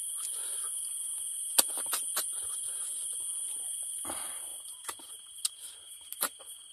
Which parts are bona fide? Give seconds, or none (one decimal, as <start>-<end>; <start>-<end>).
0.0-6.7